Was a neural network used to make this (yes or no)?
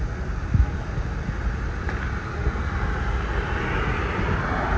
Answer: no